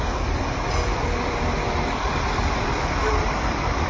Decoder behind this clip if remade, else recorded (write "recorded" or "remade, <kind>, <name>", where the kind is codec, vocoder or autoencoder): remade, vocoder, BigVGAN v2